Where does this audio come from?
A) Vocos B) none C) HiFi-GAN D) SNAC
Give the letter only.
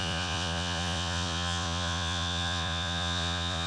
A